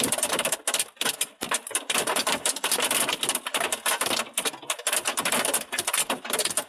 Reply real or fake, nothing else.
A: real